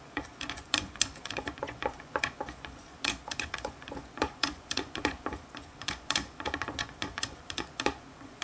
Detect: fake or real fake